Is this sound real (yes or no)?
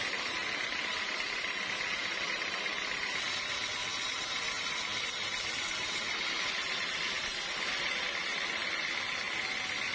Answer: yes